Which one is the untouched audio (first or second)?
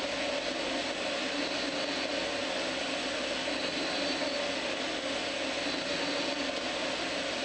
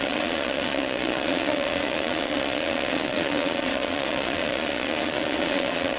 first